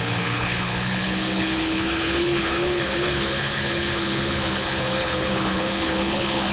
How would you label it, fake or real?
fake